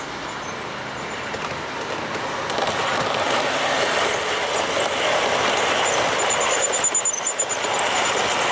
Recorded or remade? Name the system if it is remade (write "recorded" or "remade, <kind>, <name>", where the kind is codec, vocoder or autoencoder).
recorded